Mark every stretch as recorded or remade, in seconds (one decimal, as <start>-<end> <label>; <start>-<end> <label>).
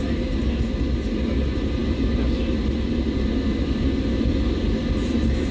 0.0-5.5 recorded